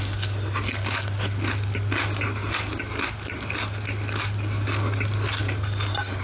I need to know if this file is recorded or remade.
recorded